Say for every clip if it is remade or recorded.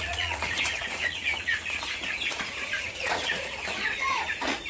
remade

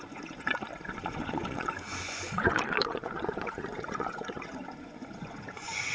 remade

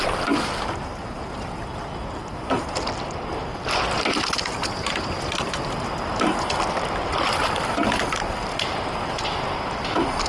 recorded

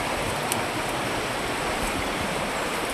recorded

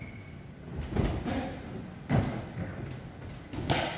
recorded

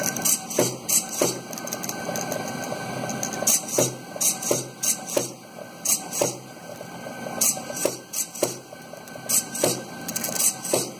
recorded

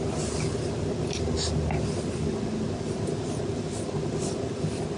recorded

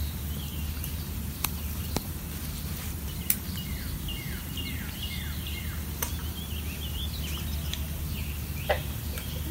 recorded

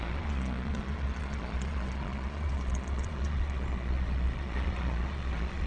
remade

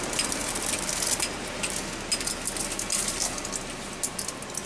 recorded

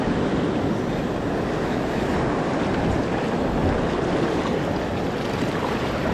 recorded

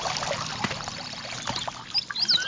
recorded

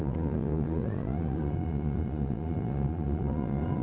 remade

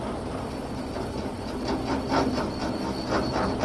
recorded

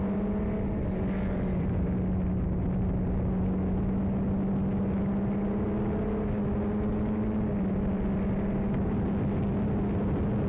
recorded